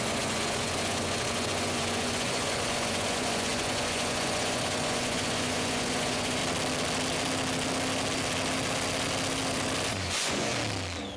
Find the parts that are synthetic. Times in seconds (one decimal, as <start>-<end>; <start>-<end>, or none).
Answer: 0.0-6.4; 9.9-10.5